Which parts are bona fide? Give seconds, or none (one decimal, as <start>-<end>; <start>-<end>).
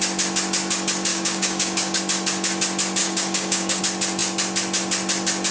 0.0-1.1; 2.0-3.0; 3.8-5.5